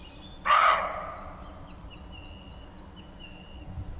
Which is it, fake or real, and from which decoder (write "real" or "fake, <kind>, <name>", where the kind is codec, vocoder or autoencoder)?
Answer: real